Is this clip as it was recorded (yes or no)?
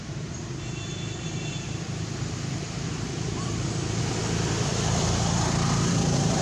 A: no